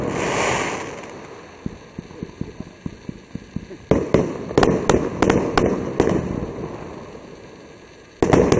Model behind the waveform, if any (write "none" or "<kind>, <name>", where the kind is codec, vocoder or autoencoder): none